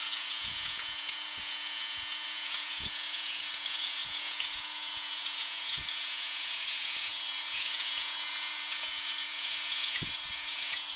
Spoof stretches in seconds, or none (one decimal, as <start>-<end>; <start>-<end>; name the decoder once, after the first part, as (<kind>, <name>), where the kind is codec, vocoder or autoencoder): 0.0-11.0 (vocoder, Vocos)